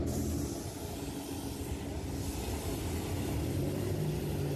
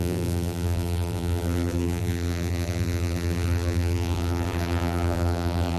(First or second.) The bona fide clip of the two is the first